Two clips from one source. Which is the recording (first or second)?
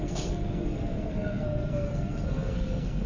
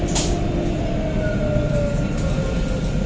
second